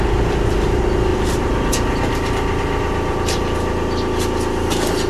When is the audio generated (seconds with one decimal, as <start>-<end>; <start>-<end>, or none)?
none